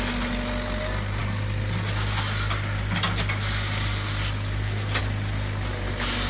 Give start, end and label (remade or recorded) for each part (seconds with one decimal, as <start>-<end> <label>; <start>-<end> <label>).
0.0-6.3 recorded